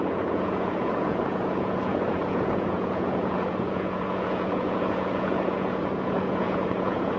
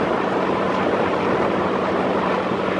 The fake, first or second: first